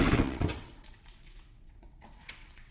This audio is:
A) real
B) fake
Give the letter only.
B